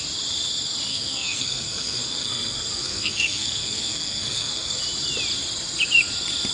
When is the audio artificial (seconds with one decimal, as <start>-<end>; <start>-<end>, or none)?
0.9-4.8